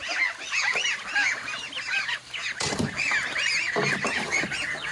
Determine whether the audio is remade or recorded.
recorded